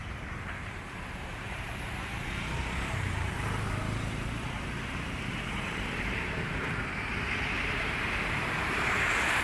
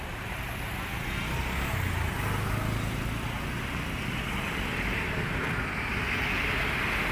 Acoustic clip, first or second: second